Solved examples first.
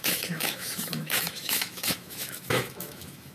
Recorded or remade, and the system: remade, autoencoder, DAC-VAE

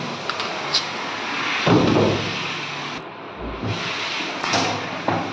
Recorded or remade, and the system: recorded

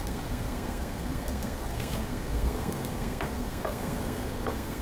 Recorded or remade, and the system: remade, codec, SNAC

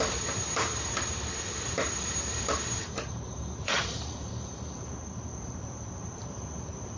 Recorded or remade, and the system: remade, vocoder, BigVGAN v2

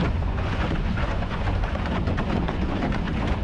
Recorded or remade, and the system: remade, vocoder, Vocos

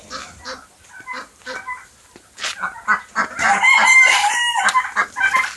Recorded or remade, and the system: recorded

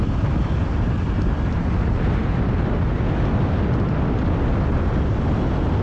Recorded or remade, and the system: recorded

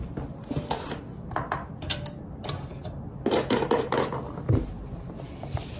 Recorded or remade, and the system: recorded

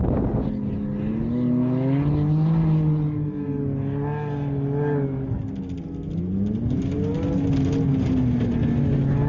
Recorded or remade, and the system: recorded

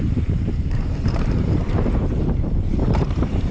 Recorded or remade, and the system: remade, vocoder, BigVGAN v2